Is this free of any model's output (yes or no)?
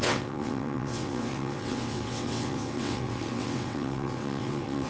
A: no